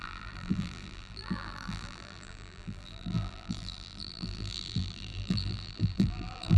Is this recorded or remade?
remade